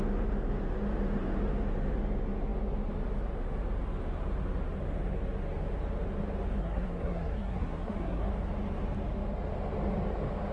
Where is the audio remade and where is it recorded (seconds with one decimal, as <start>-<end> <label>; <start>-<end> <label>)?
0.0-6.6 recorded; 6.6-8.3 remade; 8.3-10.5 recorded